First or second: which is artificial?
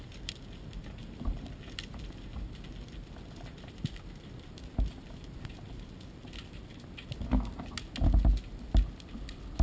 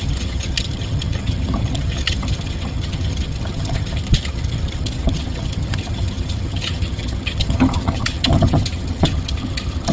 second